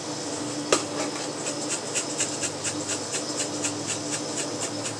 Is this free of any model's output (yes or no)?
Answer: yes